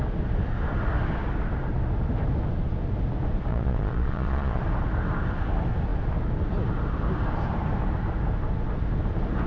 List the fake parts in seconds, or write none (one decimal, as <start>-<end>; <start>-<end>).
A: 3.5-4.6